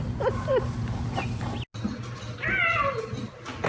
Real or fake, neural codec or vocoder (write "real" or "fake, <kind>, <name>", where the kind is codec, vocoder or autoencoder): real